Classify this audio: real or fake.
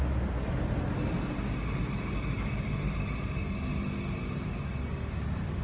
real